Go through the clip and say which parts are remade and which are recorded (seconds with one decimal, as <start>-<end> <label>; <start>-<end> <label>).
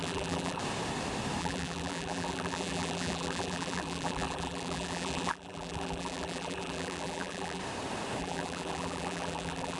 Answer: 0.0-0.6 remade; 0.6-1.4 recorded; 1.4-7.6 remade; 7.6-8.2 recorded; 8.2-9.8 remade